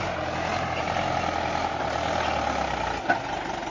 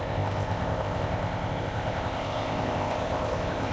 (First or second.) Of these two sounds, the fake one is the second